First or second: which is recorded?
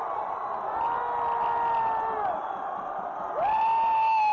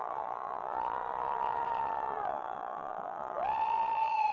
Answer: first